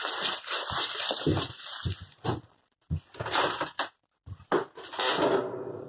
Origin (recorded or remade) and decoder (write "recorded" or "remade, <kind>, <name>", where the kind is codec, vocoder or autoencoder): recorded